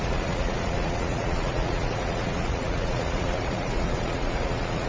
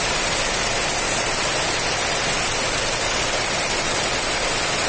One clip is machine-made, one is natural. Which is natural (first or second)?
second